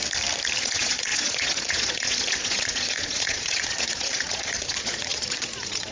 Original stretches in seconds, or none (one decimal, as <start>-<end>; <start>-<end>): 0.0-0.6